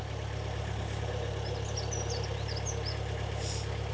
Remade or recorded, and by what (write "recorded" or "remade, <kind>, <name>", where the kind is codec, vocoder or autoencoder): recorded